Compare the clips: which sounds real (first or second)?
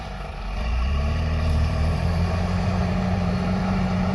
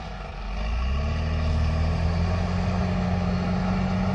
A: second